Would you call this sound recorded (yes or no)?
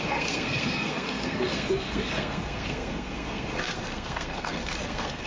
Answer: no